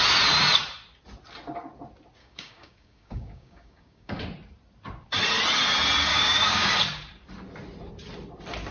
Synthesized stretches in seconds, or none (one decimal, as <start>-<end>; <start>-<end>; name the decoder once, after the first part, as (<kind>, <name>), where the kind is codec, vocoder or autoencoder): 2.2-4.2 (codec, DAC); 6.1-6.7